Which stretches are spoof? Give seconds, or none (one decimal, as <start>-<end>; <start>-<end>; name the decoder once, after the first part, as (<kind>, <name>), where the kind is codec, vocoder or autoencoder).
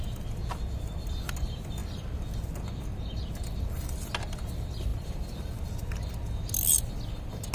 none